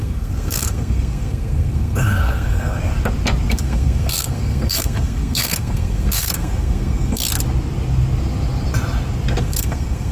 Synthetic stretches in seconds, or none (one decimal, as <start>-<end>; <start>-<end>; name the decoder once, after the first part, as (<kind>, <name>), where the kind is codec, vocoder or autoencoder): 0.0-2.8 (codec, SNAC); 3.5-7.2; 9.4-10.1